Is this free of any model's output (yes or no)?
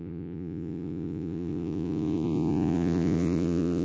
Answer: no